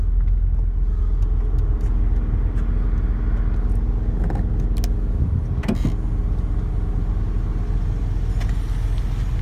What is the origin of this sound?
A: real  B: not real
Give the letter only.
A